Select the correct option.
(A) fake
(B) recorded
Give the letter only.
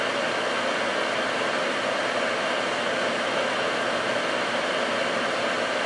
B